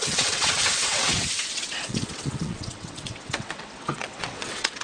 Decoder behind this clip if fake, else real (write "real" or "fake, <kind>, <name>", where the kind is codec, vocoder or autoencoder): fake, vocoder, WaveNeXt